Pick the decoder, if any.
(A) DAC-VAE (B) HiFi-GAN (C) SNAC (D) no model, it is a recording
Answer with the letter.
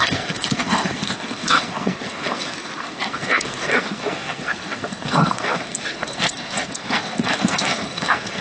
C